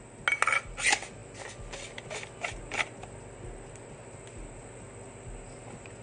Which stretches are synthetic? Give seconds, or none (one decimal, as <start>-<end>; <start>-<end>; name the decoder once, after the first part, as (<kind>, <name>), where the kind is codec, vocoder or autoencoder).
none